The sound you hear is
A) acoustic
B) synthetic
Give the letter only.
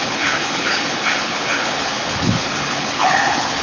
B